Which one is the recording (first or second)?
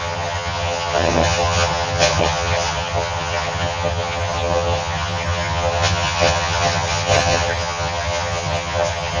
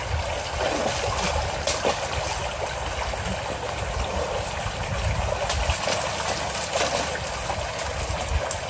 second